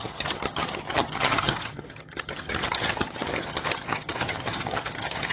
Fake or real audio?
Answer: fake